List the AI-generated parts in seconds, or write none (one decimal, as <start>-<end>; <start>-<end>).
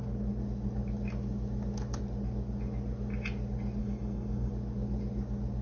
3.8-4.5